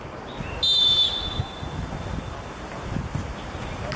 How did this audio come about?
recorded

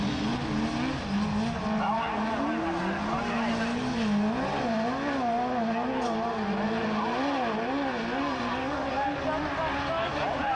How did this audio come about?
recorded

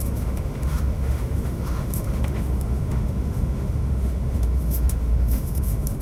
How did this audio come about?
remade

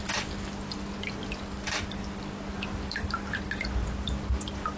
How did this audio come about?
recorded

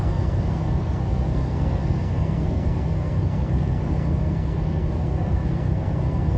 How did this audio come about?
remade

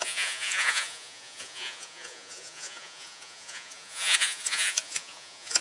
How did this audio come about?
remade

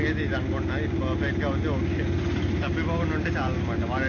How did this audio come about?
recorded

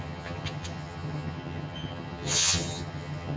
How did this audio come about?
remade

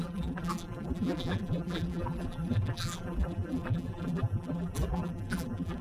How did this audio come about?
remade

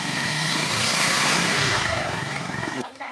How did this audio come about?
remade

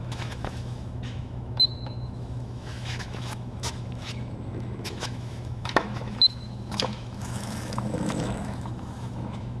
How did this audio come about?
remade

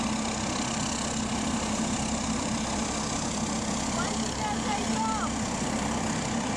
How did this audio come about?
recorded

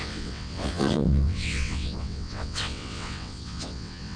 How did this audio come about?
remade